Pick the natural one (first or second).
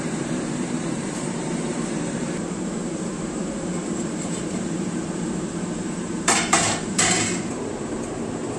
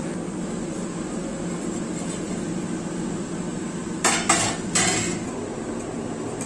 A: second